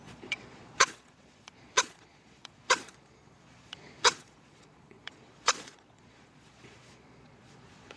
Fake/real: fake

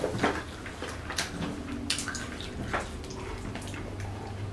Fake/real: real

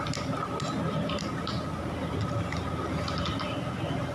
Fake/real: real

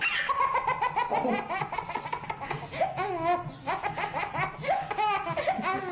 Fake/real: real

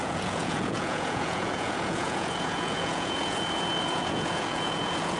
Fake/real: fake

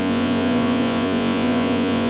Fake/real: fake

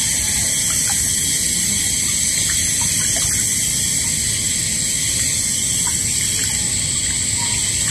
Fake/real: real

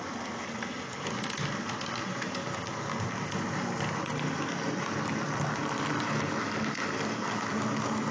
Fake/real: real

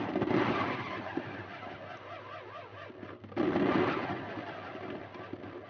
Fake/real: real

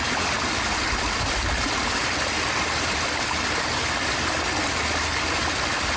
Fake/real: real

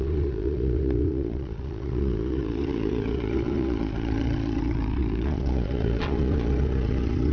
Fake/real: fake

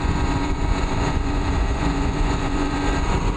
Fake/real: fake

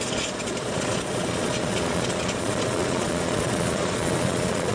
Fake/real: fake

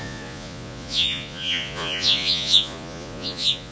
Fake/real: fake